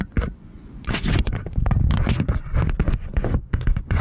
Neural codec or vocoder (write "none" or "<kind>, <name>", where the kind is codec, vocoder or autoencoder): vocoder, Vocos